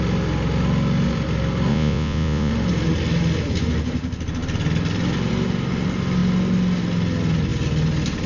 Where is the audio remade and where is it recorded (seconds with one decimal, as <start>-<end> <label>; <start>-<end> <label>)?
0.0-1.7 recorded; 1.7-2.5 remade; 2.5-8.3 recorded